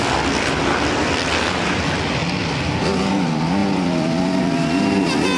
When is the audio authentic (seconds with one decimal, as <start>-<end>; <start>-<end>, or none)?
0.0-3.6; 5.0-5.4

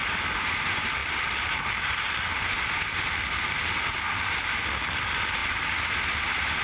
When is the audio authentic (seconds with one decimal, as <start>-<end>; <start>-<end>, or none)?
0.0-6.6

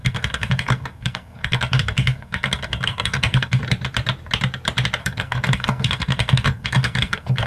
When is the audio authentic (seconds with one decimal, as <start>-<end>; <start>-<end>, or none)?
3.6-5.0